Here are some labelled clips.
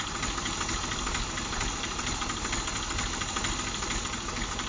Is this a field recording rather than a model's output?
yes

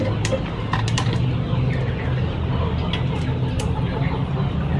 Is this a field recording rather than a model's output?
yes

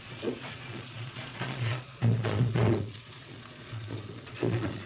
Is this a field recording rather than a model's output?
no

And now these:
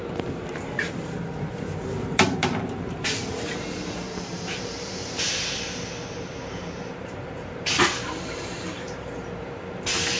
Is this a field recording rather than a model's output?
no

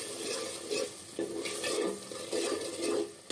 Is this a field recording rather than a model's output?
yes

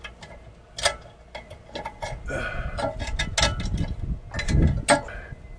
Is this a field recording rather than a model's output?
yes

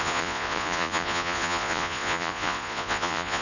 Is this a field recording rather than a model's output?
no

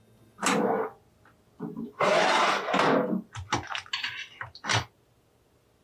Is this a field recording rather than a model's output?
yes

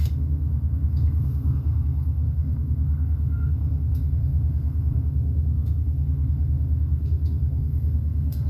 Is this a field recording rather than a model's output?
no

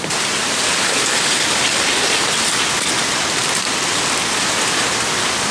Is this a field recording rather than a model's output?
yes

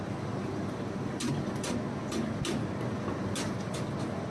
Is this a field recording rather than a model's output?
yes